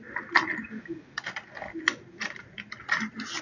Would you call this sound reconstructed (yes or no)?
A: no